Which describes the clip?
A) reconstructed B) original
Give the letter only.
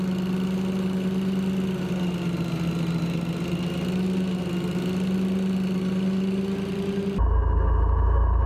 B